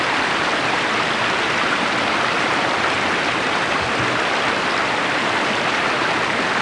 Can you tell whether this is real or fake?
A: real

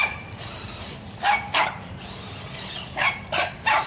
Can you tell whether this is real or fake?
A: fake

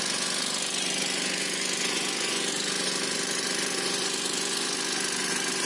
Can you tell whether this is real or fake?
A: fake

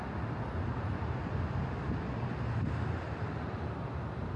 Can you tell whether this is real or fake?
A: real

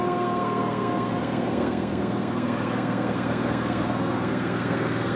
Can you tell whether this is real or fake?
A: fake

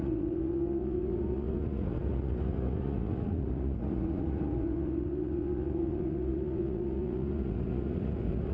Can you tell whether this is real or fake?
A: fake